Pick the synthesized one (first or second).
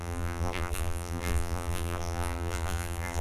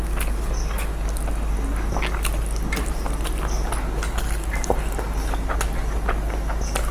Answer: first